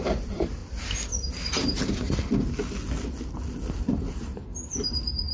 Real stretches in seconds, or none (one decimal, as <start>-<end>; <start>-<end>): 0.6-3.8